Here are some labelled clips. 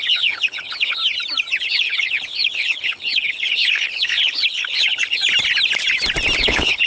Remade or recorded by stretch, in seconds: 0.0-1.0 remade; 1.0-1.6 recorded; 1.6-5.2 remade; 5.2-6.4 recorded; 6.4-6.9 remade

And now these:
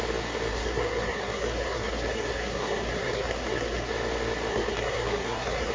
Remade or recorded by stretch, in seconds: 0.0-0.5 recorded; 0.5-3.9 remade; 3.9-4.5 recorded; 4.5-5.7 remade

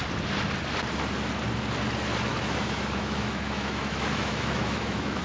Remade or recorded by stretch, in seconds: 0.0-2.3 recorded; 2.3-5.2 remade

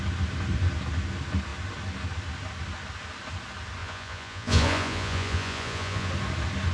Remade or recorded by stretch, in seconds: 0.0-3.8 recorded; 3.8-6.1 remade; 6.1-6.7 recorded

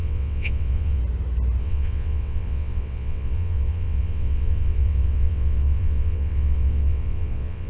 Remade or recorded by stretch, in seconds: 0.0-1.0 remade; 1.0-1.6 recorded; 1.6-7.7 remade

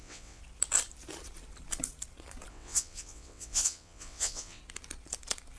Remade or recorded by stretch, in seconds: 0.0-0.4 remade; 0.4-2.5 recorded; 2.5-4.6 remade; 4.6-5.6 recorded

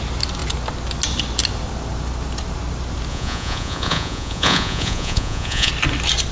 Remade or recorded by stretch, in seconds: 0.0-3.1 recorded; 3.1-5.7 remade; 5.7-6.3 recorded